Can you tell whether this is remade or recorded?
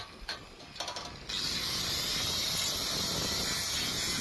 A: recorded